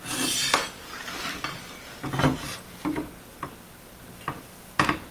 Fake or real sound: real